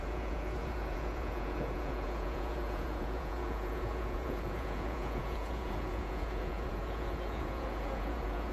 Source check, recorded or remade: remade